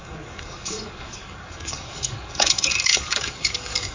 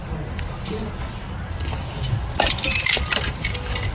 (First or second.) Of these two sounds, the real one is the second